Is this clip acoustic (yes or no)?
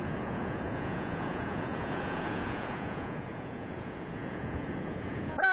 no